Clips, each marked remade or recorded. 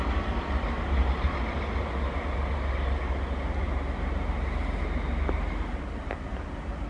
recorded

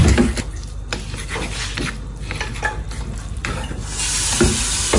recorded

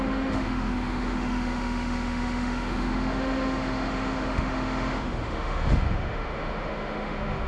remade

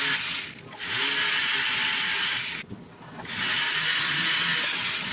recorded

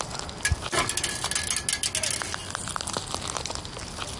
recorded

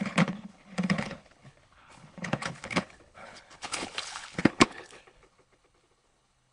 remade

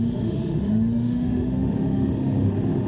remade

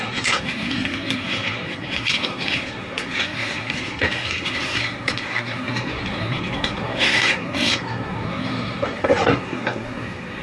remade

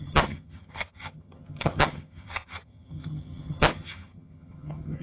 remade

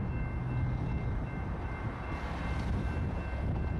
recorded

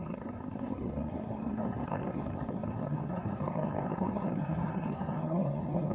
remade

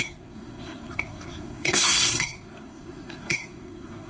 remade